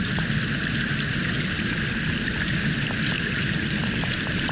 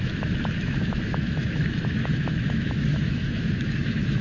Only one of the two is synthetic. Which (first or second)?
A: second